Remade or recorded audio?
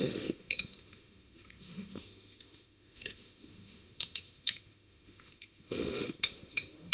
remade